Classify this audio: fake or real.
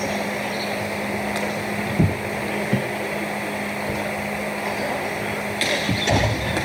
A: real